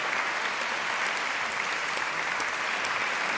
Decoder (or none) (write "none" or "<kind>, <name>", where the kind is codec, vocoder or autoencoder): vocoder, BigVGAN v2